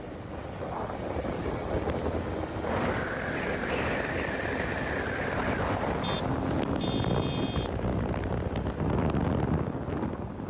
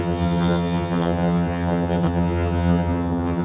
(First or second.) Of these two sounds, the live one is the first